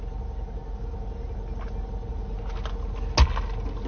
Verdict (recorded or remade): recorded